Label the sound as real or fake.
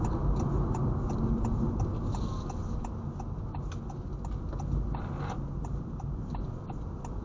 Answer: real